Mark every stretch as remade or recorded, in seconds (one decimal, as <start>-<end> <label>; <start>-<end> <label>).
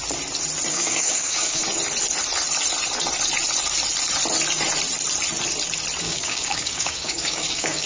0.0-0.7 recorded; 0.7-1.6 remade; 1.6-6.0 recorded; 6.0-7.9 remade